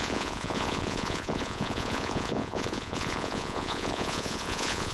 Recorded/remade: remade